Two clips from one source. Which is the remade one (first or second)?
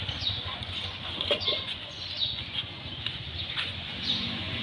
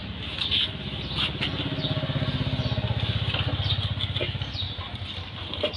first